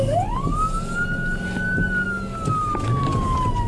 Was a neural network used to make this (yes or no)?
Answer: no